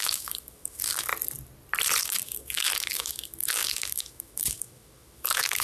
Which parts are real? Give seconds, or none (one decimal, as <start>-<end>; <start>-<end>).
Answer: 1.1-2.0